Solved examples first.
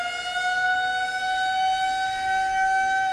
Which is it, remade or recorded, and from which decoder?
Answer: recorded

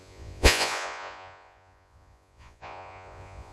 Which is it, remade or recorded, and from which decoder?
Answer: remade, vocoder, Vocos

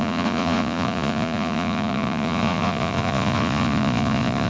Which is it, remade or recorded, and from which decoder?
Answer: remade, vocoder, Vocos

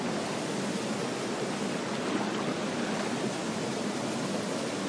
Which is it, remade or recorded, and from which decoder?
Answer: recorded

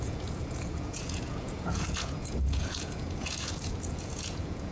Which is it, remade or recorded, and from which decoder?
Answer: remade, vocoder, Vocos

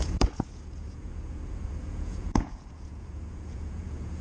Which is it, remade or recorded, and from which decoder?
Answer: remade, vocoder, Vocos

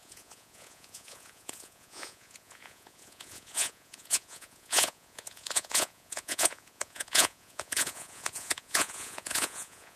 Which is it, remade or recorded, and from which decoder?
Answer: remade, vocoder, Vocos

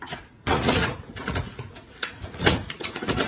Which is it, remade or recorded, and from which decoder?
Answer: remade, vocoder, Vocos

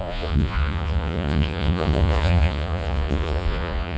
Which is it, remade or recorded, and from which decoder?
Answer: remade, vocoder, Vocos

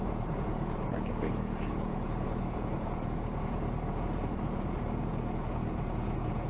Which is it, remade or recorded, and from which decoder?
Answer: remade, vocoder, Vocos